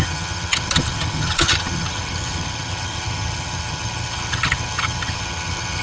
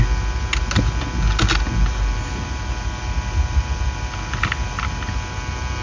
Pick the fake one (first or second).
first